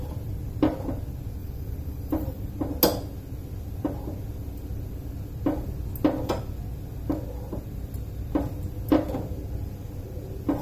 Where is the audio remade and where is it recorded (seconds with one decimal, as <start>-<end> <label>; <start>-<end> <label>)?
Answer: 0.0-1.4 recorded; 1.4-2.5 remade; 2.5-10.6 recorded